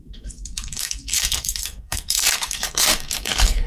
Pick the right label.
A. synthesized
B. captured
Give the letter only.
A